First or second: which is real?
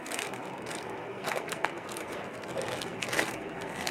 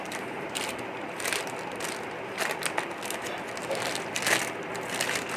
second